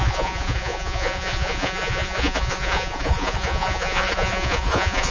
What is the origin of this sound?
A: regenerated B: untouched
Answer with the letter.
A